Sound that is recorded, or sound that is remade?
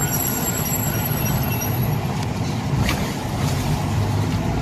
recorded